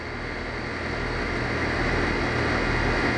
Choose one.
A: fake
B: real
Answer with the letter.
B